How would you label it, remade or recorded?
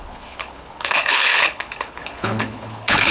remade